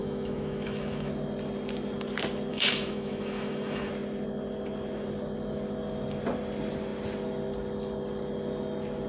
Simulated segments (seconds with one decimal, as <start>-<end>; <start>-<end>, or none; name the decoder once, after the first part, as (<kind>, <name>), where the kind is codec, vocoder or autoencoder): 0.0-1.1 (autoencoder, DAC-VAE); 2.5-3.9